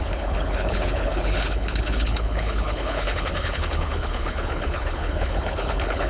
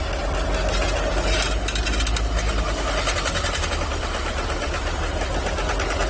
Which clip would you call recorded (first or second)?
second